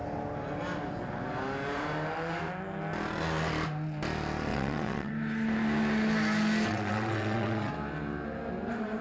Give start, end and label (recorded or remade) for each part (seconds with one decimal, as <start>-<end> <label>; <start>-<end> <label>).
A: 0.0-4.5 recorded; 4.5-5.1 remade; 5.1-6.7 recorded; 6.7-7.7 remade; 7.7-9.0 recorded